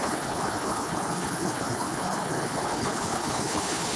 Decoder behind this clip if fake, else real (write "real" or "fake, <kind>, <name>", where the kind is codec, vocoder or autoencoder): fake, codec, HILCodec